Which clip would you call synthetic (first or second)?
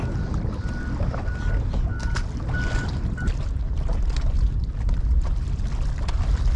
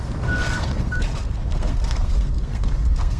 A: second